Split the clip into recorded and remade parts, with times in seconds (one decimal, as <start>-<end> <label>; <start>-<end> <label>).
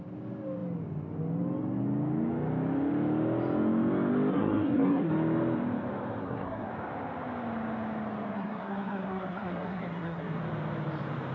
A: 0.0-4.3 recorded; 4.3-5.1 remade; 5.1-6.2 recorded; 6.2-6.7 remade; 6.7-8.3 recorded; 8.3-10.4 remade; 10.4-11.3 recorded